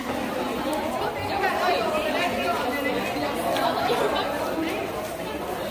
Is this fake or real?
real